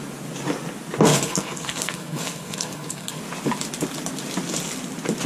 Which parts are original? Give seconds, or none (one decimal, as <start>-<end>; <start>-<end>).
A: 0.0-1.1; 3.2-5.3